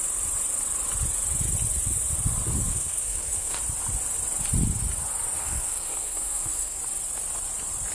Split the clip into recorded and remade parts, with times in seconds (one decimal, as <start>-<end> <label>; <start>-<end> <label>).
0.0-2.7 recorded; 2.7-3.6 remade; 3.6-5.4 recorded; 5.4-6.8 remade; 6.8-7.9 recorded